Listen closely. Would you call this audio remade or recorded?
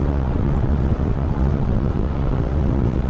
remade